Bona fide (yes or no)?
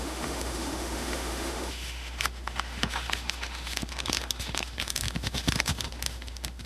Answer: no